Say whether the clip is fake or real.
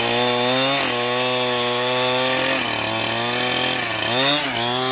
real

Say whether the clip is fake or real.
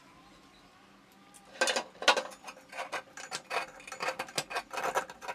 real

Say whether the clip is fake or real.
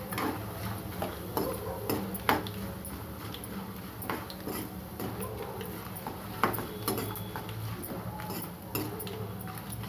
real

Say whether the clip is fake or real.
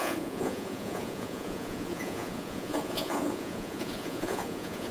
fake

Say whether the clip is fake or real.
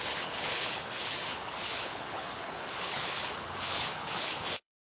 fake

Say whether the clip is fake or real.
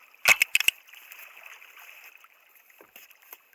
real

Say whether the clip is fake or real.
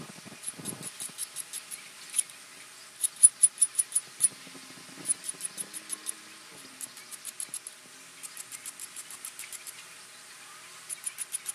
real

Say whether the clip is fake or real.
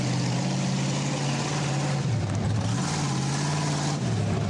real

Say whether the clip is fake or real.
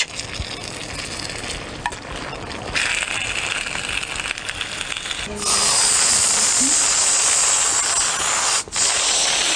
real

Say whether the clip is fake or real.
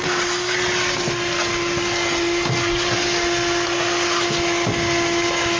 real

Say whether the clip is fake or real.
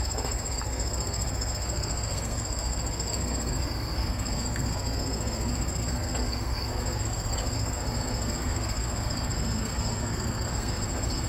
fake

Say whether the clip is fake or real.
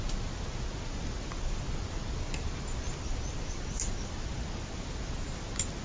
real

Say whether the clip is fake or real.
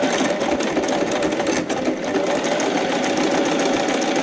real